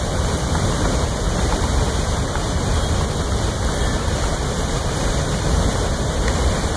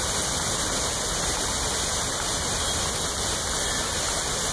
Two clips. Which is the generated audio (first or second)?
first